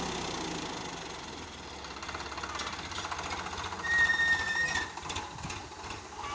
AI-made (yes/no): no